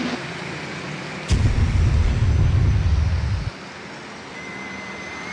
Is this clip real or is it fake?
real